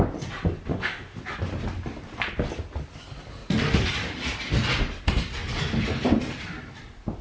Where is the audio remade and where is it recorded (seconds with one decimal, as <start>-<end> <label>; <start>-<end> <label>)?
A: 0.0-0.7 recorded; 0.7-1.2 remade; 1.2-7.2 recorded